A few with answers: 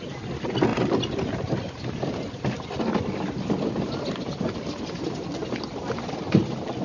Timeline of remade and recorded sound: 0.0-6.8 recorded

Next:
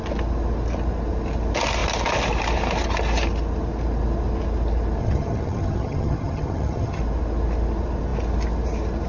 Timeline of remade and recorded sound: 0.0-5.0 recorded; 5.0-7.0 remade; 7.0-9.1 recorded

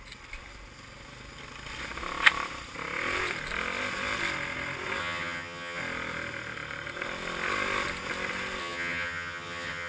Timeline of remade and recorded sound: 0.0-5.0 recorded; 5.0-5.8 remade; 5.8-8.6 recorded; 8.6-9.9 remade